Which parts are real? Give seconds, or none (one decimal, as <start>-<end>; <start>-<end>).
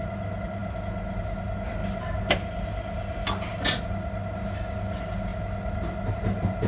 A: 0.0-6.7